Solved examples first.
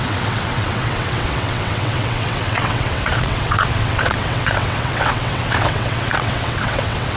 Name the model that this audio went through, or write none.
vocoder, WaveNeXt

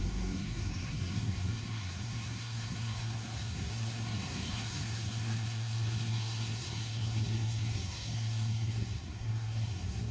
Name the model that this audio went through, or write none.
codec, SNAC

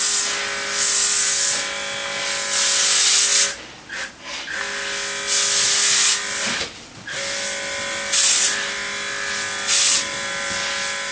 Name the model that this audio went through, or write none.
none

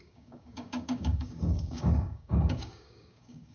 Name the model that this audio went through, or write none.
codec, DAC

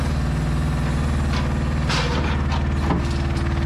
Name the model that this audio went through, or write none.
none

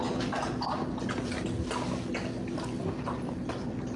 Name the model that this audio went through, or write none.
none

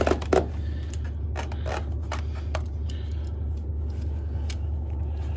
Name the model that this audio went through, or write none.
none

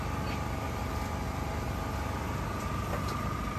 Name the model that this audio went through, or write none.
none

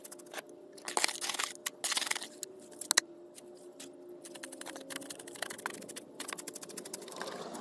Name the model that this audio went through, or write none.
none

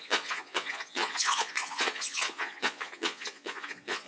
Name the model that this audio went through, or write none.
vocoder, Vocos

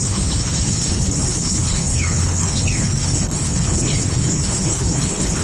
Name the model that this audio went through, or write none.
codec, HILCodec